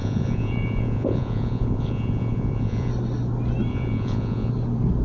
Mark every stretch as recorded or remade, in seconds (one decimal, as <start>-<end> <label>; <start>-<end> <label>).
0.0-2.9 remade; 2.9-3.7 recorded; 3.7-4.5 remade; 4.5-5.0 recorded